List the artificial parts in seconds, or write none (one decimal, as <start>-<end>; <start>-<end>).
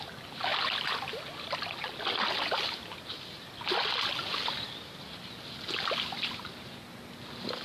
none